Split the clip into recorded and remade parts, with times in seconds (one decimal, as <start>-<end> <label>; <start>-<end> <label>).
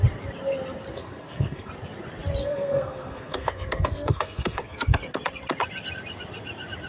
0.0-0.9 recorded; 0.9-1.7 remade; 1.7-2.4 recorded; 2.4-5.0 remade; 5.0-6.9 recorded